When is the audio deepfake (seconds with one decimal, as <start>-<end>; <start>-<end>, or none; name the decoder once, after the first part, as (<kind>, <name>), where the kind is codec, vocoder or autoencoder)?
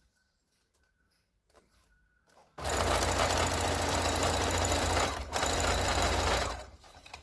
0.0-2.4 (vocoder, BigVGAN v2); 3.9-7.2